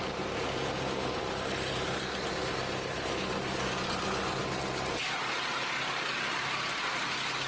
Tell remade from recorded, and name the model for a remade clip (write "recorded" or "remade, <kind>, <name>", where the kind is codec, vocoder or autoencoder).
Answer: recorded